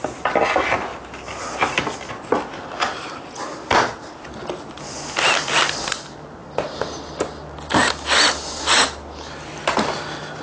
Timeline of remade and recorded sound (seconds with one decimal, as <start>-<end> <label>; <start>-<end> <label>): 0.0-6.4 recorded; 6.4-6.9 remade; 6.9-10.4 recorded